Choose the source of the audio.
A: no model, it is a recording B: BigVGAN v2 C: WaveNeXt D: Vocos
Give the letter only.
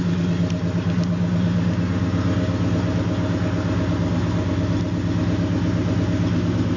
A